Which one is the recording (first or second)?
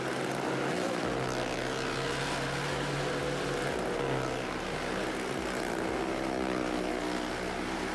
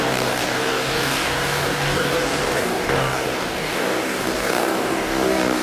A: first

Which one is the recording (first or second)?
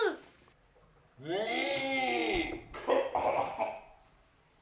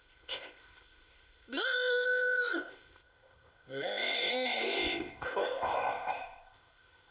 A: first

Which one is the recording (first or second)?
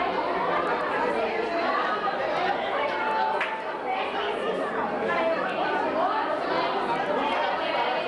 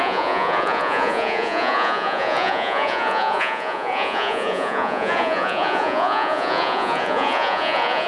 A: first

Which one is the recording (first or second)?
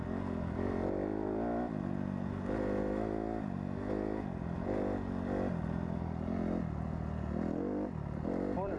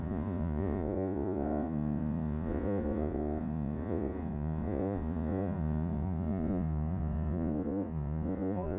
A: first